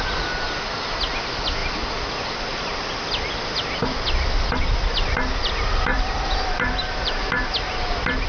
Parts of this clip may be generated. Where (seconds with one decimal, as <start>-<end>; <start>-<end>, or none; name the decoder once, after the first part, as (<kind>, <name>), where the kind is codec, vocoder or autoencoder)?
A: 5.9-7.2 (vocoder, BigVGAN v2)